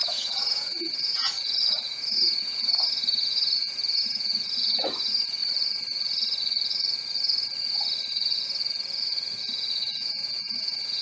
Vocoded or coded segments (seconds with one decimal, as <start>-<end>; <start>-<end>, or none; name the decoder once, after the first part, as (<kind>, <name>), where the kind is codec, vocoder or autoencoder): 0.0-5.4 (vocoder, Vocos); 9.4-11.0